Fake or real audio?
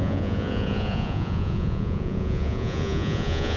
fake